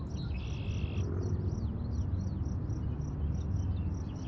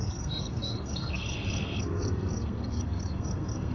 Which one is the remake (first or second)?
second